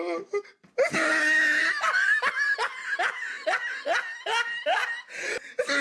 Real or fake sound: real